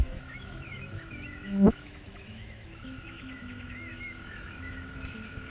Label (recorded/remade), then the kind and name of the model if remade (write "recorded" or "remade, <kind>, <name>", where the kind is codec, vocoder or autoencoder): remade, autoencoder, DAC-VAE